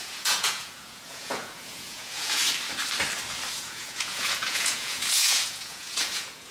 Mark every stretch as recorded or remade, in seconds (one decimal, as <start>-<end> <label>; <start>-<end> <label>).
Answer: 0.0-2.4 remade; 2.4-3.5 recorded; 3.5-6.5 remade